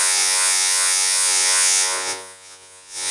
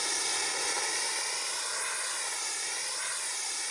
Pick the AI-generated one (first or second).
first